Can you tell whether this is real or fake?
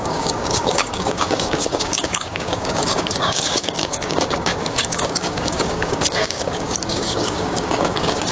fake